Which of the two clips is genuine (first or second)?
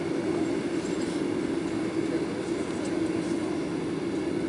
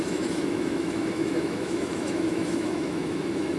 first